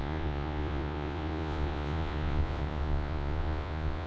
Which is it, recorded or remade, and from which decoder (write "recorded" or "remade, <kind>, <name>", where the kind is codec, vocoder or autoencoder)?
remade, vocoder, Vocos